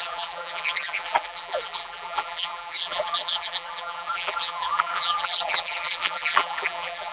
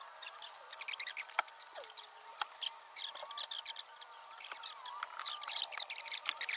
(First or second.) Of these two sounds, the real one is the second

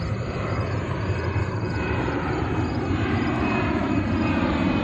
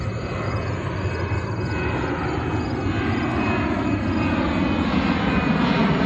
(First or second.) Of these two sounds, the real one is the second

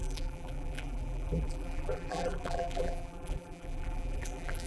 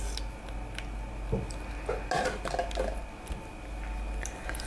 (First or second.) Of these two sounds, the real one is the second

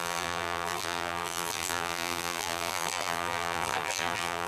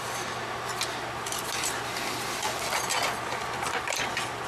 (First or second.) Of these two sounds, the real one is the second